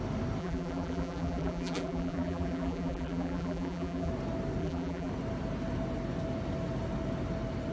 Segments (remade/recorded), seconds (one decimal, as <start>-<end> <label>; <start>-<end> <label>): 0.0-0.4 recorded; 0.4-4.1 remade; 4.1-4.6 recorded; 4.6-5.1 remade; 5.1-7.7 recorded